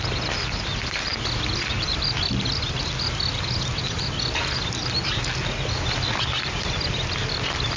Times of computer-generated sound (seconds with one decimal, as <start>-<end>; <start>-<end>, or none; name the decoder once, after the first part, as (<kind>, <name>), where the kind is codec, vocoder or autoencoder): none